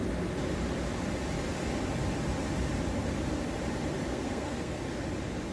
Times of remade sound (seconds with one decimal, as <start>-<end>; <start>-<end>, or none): 4.1-4.8

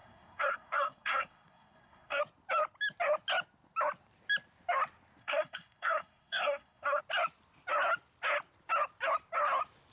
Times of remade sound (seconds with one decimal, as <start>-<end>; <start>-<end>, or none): 0.0-2.2; 5.2-7.0

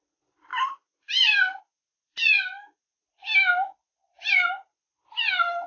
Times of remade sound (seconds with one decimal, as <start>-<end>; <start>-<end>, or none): none

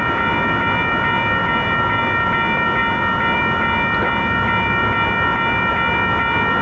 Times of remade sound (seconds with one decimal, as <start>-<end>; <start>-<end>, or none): none

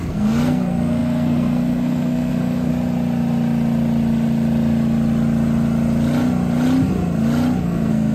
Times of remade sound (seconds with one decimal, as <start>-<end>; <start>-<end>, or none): 0.0-2.7; 7.6-8.1

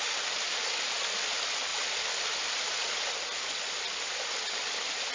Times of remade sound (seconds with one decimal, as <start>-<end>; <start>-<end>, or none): none